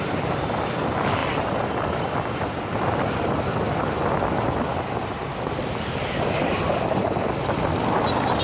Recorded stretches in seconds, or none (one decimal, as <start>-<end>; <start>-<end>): 0.0-8.4